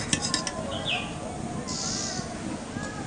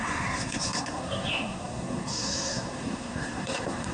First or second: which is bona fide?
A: first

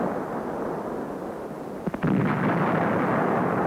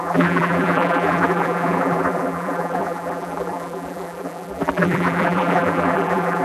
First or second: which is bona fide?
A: first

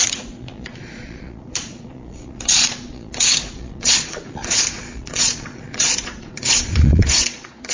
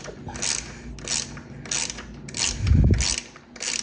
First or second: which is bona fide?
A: second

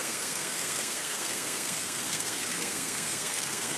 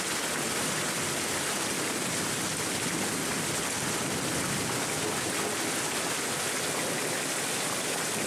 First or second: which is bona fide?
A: second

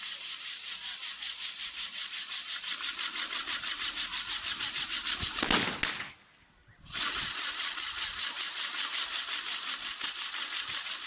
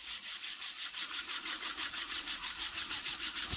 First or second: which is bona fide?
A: first